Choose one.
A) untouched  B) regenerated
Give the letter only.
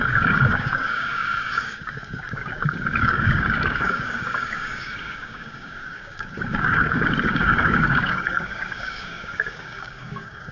B